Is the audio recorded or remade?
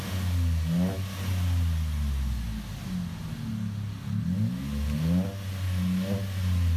recorded